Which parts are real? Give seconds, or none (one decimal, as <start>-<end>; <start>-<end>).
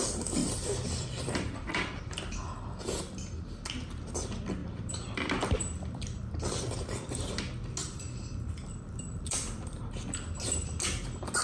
0.0-0.4; 2.2-4.6; 6.3-7.8; 9.9-11.4